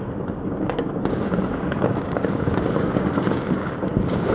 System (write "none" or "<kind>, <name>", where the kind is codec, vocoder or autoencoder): codec, DAC